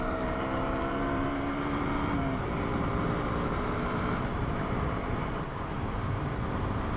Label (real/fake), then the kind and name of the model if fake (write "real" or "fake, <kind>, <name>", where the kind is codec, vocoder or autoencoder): fake, vocoder, BigVGAN v2